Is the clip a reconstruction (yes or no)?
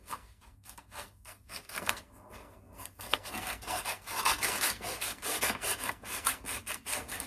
yes